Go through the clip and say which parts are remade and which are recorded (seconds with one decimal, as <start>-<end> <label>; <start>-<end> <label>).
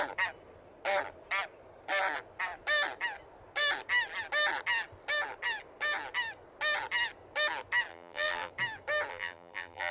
0.0-7.9 recorded; 7.9-8.5 remade; 8.5-9.1 recorded; 9.1-9.9 remade